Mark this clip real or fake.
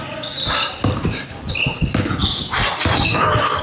real